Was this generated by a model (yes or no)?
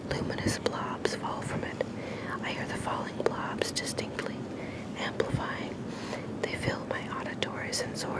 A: no